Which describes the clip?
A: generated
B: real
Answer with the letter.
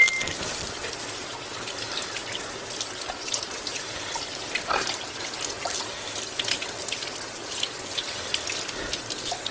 B